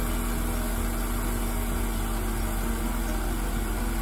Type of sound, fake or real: real